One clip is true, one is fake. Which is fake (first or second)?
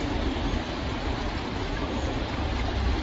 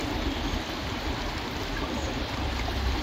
first